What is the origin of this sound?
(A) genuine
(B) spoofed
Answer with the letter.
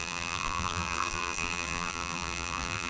B